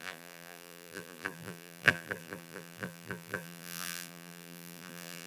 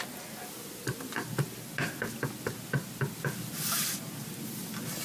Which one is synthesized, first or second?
first